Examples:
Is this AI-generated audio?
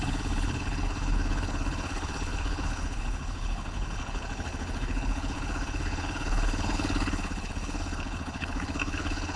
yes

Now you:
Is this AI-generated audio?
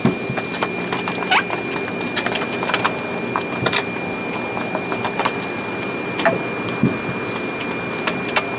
no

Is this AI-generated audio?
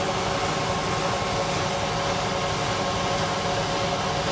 no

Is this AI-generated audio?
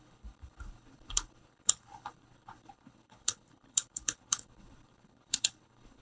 yes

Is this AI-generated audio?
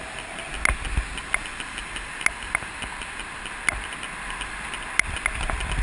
no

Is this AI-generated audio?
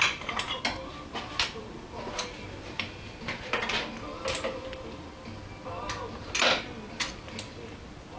no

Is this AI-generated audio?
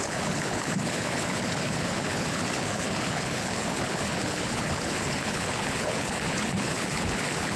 yes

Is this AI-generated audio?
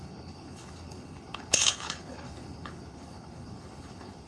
yes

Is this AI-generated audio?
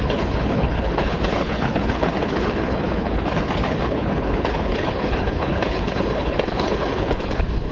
yes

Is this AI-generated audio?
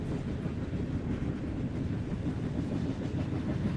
no